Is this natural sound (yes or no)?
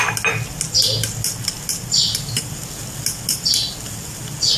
yes